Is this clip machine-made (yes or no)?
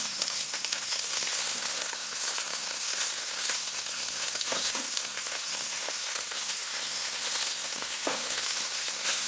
yes